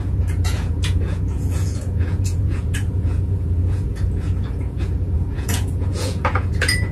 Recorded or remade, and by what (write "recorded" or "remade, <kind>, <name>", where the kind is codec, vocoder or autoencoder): remade, vocoder, Vocos